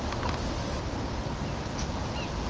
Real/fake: real